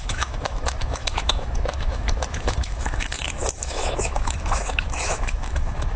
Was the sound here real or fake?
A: fake